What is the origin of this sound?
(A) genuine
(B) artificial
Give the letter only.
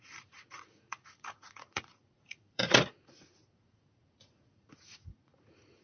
B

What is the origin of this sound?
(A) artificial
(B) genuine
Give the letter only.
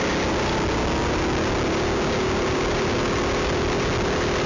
B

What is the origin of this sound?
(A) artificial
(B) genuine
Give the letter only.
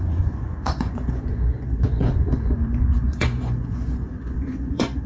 A